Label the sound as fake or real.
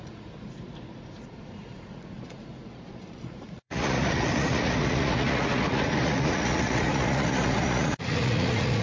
fake